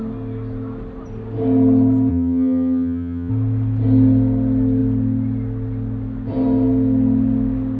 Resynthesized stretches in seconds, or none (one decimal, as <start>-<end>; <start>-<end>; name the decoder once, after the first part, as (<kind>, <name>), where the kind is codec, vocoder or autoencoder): 2.1-3.3 (vocoder, HiFi-GAN)